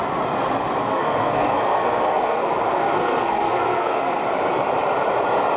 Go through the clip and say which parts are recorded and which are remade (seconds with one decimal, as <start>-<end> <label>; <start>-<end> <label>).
0.0-0.8 recorded; 0.8-4.2 remade; 4.2-5.6 recorded